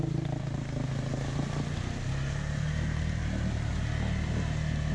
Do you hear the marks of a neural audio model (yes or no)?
no